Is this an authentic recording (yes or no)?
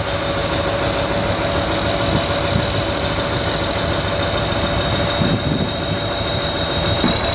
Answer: yes